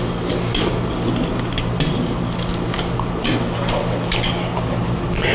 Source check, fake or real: real